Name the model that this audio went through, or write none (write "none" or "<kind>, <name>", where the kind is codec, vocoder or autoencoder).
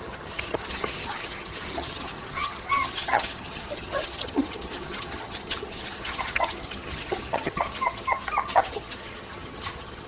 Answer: vocoder, HiFi-GAN